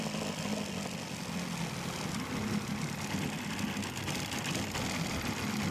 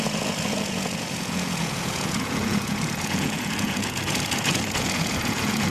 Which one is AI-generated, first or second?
second